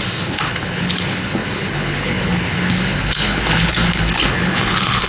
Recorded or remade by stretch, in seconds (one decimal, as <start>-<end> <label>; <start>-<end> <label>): 0.0-5.1 remade